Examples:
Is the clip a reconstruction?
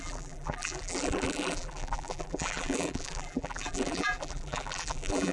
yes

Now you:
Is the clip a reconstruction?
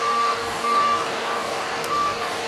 yes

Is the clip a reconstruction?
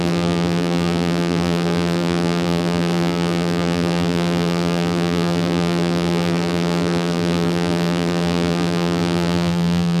yes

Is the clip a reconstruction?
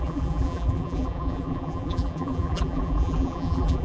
yes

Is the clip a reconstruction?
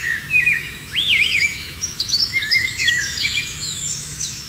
yes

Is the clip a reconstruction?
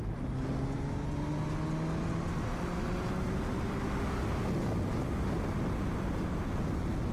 no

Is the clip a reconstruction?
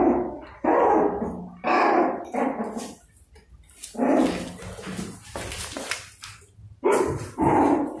no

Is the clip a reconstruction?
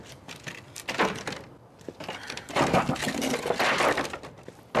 no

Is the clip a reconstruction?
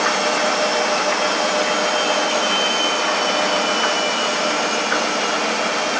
no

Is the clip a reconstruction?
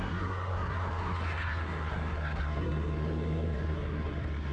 yes